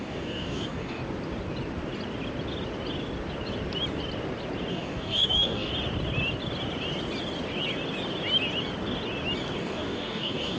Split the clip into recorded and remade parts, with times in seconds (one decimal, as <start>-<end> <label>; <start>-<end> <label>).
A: 0.0-1.0 remade; 1.0-4.7 recorded; 4.7-5.7 remade; 5.7-9.6 recorded; 9.6-10.6 remade

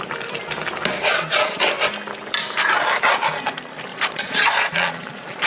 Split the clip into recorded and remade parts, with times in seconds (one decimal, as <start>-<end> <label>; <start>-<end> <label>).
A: 0.0-1.1 recorded; 1.1-1.6 remade; 1.6-3.9 recorded; 3.9-5.5 remade